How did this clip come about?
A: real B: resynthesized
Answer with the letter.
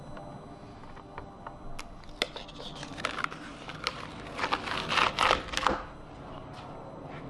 A